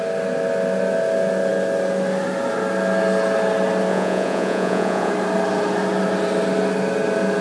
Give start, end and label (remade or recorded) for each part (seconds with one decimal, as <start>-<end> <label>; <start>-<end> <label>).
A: 0.0-3.9 recorded; 3.9-5.1 remade; 5.1-7.4 recorded